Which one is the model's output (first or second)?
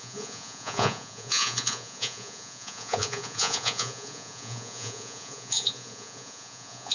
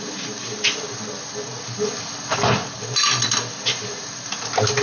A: first